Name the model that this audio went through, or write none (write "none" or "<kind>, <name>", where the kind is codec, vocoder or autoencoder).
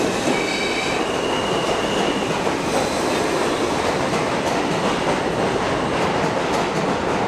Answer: none